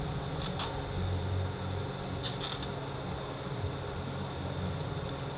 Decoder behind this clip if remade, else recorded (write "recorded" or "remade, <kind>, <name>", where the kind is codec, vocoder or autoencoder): recorded